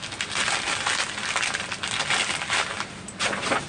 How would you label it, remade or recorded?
recorded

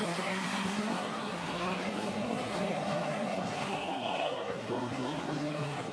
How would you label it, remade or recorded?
remade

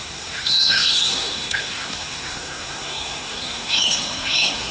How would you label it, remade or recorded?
remade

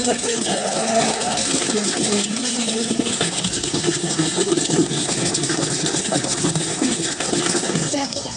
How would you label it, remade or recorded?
remade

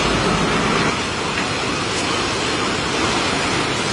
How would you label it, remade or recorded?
recorded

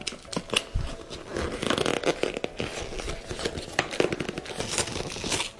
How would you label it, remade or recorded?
recorded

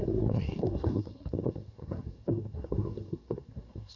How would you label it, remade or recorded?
remade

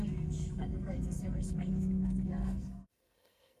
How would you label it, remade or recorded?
remade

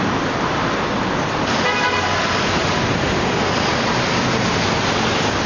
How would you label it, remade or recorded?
recorded